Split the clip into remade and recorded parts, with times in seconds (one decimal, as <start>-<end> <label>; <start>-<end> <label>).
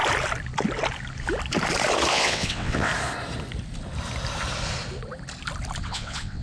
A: 0.0-2.1 recorded; 2.1-2.9 remade; 2.9-5.8 recorded; 5.8-6.4 remade